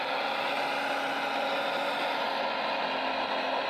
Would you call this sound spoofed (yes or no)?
no